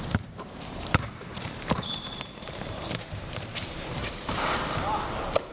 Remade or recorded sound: remade